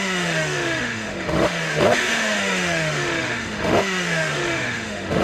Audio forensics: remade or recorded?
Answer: remade